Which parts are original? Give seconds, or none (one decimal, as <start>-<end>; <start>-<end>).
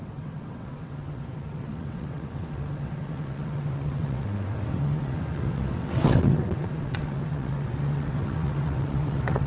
none